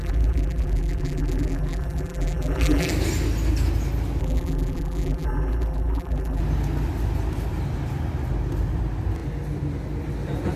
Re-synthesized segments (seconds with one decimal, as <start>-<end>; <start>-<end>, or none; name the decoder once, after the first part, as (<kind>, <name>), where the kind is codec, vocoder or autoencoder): 0.0-2.9 (vocoder, BigVGAN v2); 4.2-6.4